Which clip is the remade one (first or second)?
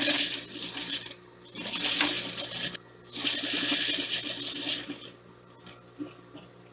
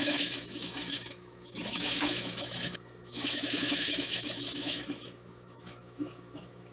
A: second